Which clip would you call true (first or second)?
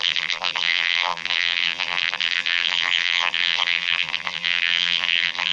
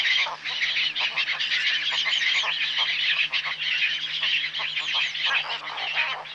second